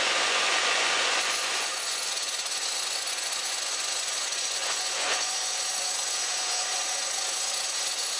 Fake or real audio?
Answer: fake